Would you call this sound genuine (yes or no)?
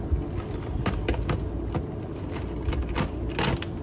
yes